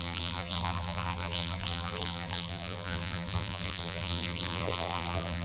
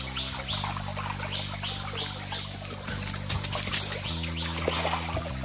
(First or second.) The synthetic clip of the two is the first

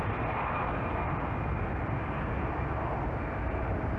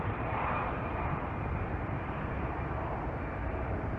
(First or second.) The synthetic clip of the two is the second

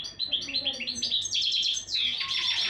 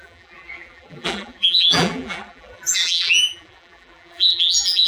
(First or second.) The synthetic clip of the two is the second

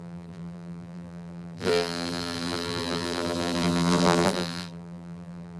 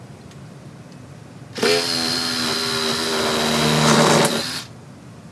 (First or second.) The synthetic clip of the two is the first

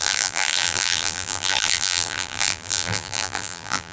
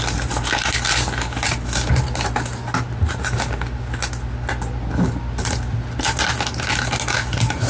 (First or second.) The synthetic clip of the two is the first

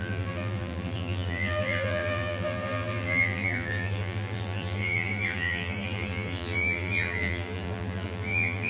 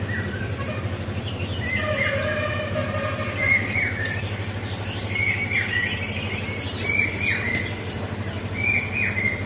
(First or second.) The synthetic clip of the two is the first